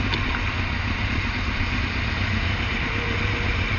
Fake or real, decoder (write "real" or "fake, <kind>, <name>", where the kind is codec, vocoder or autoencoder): fake, vocoder, BigVGAN v2